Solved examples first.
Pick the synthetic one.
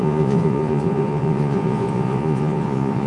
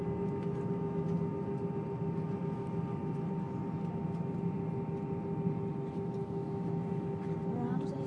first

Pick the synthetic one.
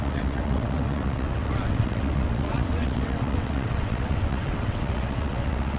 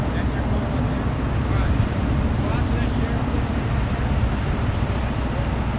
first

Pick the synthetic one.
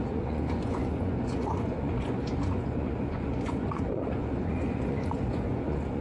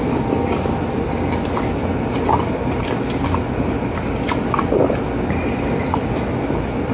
first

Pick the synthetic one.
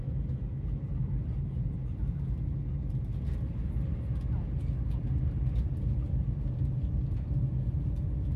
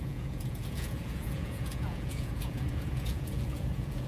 second